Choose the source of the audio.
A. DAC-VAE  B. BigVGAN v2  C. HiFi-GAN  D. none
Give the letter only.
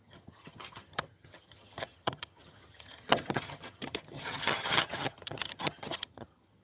C